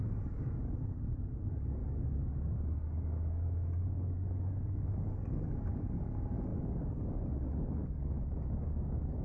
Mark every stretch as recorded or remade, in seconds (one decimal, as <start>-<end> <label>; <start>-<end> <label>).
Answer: 0.0-9.2 remade